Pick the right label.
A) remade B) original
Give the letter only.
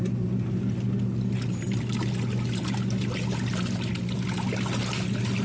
B